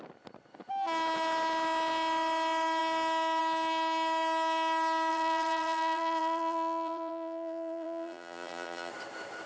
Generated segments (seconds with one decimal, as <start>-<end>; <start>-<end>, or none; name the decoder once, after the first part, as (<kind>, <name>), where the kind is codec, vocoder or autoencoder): 5.1-8.9 (vocoder, BigVGAN v2)

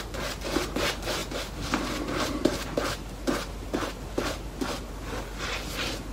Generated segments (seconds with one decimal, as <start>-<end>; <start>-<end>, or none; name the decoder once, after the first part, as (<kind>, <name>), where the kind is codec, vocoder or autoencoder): none

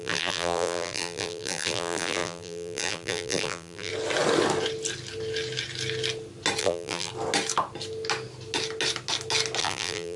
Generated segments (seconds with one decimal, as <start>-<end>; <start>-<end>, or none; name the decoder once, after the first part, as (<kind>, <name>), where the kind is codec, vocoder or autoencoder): 0.0-3.9 (vocoder, BigVGAN v2); 6.6-7.1; 9.6-10.2

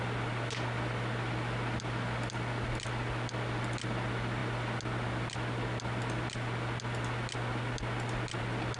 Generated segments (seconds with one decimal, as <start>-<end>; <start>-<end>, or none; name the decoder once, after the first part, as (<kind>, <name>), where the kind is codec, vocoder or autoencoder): none

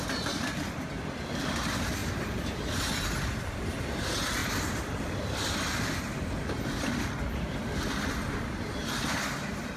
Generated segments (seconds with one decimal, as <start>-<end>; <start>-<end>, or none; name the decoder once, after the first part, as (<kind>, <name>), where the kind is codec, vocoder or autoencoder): none